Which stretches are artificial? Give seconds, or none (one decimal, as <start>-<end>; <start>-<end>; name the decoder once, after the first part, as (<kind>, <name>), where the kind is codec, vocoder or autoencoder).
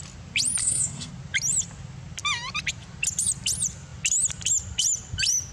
0.6-1.1 (codec, SNAC)